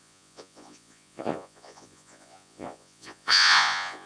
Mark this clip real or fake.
fake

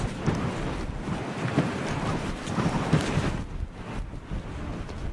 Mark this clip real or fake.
real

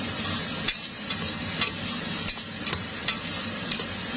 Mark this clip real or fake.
real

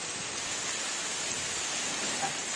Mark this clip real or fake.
real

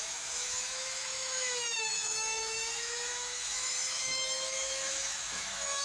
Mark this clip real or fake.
fake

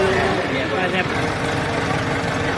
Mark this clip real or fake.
real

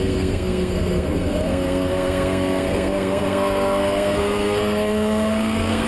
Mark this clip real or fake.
fake